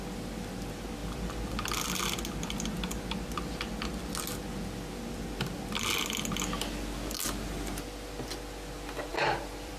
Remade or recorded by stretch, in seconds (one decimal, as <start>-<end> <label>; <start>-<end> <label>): 0.0-9.1 recorded; 9.1-9.8 remade